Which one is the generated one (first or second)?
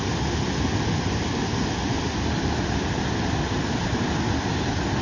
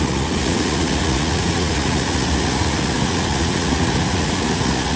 second